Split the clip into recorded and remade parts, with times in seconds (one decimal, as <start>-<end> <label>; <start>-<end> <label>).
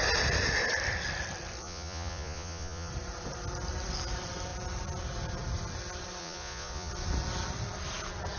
0.0-1.6 recorded; 1.6-2.9 remade; 2.9-6.2 recorded; 6.2-6.9 remade; 6.9-8.4 recorded